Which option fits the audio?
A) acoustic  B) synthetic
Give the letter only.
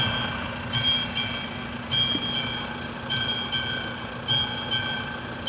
A